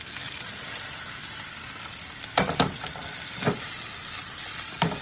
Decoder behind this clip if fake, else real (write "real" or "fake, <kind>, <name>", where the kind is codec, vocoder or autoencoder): real